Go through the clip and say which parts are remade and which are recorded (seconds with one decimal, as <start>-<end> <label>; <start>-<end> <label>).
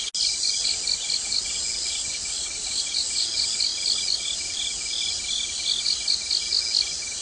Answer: 0.0-7.2 recorded